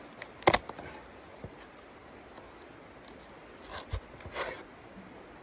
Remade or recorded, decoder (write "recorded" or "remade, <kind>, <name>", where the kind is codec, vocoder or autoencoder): recorded